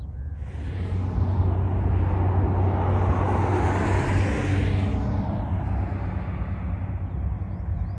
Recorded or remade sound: recorded